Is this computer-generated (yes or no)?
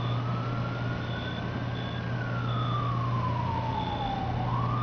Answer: no